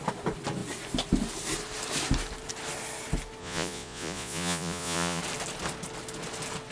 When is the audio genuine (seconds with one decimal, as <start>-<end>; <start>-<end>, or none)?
0.0-3.4; 5.2-6.7